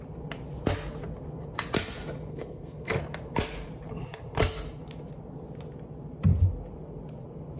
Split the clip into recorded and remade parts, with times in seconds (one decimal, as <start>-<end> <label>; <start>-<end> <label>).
0.0-2.3 recorded; 2.3-3.0 remade; 3.0-7.6 recorded